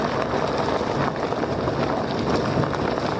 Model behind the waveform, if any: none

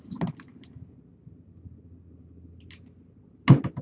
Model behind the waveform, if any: none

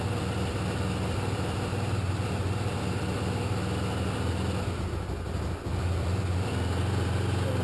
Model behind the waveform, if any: none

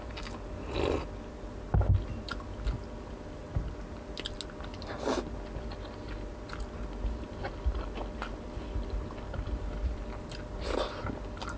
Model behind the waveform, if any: none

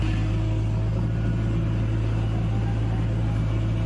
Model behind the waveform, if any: none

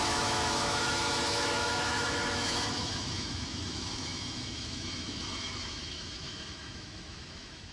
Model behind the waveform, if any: autoencoder, DAC-VAE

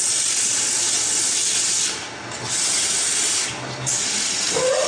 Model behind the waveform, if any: none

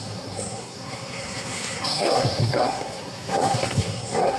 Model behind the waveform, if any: codec, SNAC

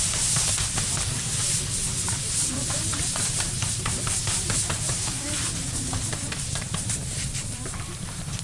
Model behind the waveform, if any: vocoder, BigVGAN v2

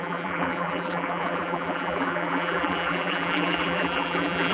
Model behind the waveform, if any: vocoder, BigVGAN v2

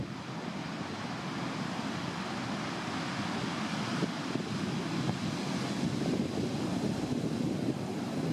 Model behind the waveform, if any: none